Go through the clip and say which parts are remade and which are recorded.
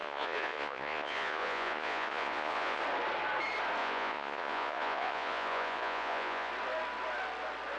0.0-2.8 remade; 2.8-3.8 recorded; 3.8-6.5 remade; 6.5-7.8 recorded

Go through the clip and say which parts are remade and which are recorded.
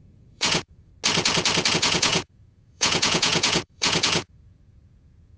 0.0-0.9 remade; 0.9-1.7 recorded; 1.7-5.4 remade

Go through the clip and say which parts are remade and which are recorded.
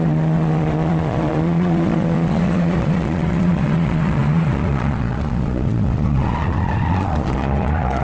0.0-8.0 remade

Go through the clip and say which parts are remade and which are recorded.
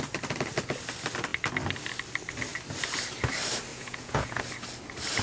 0.0-3.7 recorded; 3.7-4.4 remade; 4.4-5.2 recorded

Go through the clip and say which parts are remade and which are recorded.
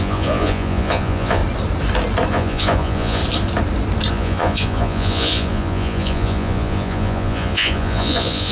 0.0-1.4 remade; 1.4-2.3 recorded; 2.3-3.2 remade; 3.2-4.1 recorded; 4.1-8.5 remade